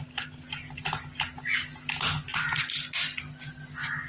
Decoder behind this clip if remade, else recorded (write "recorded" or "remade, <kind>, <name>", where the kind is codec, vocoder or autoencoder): recorded